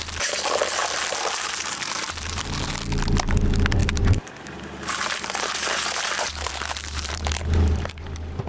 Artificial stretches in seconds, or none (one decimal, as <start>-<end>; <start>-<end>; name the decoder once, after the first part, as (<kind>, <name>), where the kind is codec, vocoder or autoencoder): 0.8-2.7 (vocoder, BigVGAN v2); 3.8-8.0